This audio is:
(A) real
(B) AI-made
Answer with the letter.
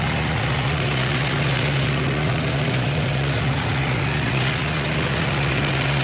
B